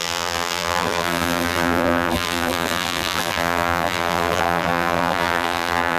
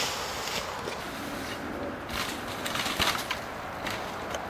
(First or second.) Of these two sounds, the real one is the second